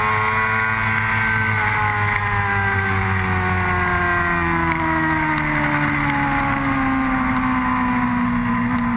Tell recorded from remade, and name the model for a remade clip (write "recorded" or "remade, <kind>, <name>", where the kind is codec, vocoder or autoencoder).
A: recorded